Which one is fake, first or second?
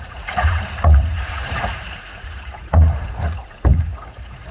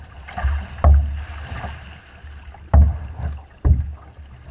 first